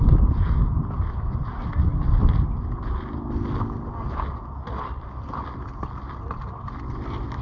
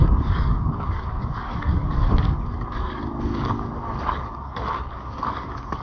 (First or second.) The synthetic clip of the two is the second